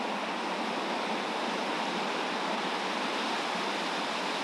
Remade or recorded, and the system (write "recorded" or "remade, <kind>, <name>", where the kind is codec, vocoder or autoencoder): recorded